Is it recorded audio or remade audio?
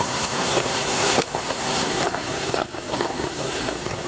remade